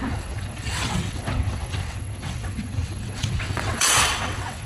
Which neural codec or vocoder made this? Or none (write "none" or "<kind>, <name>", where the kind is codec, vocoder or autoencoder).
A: vocoder, WaveNeXt